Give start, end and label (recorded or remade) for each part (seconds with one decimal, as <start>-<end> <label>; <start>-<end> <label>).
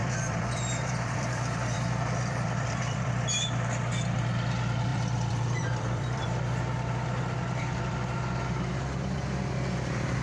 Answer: 0.0-3.1 remade; 3.1-4.9 recorded; 4.9-6.6 remade; 6.6-8.7 recorded; 8.7-10.2 remade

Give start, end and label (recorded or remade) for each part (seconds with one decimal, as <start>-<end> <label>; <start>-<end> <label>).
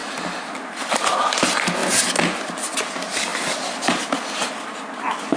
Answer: 0.0-5.4 recorded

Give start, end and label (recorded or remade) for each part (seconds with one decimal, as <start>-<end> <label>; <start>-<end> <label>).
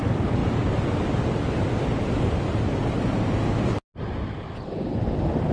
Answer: 0.0-5.5 recorded